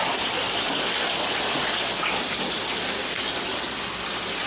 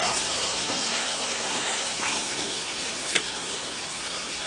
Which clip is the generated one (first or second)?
second